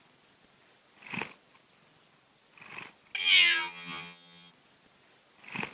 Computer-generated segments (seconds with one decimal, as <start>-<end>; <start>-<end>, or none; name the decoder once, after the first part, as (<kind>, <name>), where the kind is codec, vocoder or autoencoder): 3.2-4.5 (vocoder, HiFi-GAN)